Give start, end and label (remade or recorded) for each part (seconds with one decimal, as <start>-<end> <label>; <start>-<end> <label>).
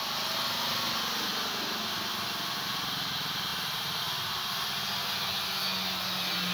0.0-6.5 recorded